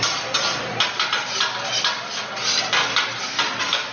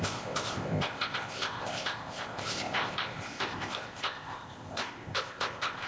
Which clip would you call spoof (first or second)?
second